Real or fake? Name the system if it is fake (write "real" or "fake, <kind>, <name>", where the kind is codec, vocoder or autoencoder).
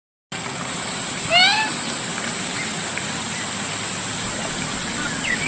real